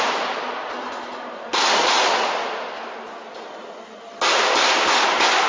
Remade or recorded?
recorded